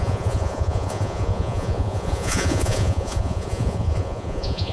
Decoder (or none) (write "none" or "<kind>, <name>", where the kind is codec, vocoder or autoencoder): vocoder, Vocos